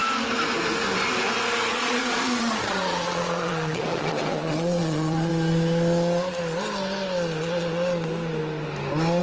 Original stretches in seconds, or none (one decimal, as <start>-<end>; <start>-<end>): 0.0-1.7; 5.3-9.2